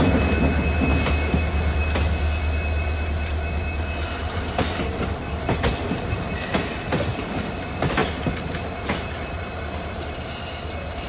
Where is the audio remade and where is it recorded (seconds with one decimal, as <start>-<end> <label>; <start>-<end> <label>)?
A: 0.0-8.0 recorded; 8.0-9.4 remade; 9.4-11.1 recorded